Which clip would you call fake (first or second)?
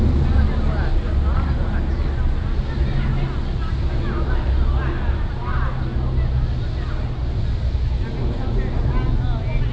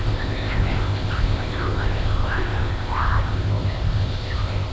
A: second